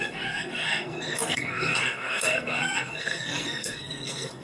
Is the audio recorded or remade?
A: remade